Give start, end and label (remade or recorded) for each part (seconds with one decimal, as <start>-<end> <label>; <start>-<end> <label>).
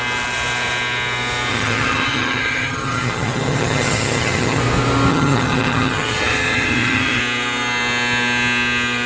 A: 0.0-1.5 recorded; 1.5-4.6 remade; 4.6-5.1 recorded; 5.1-7.2 remade; 7.2-9.1 recorded